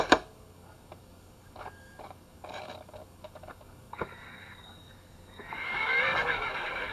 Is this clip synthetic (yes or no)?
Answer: yes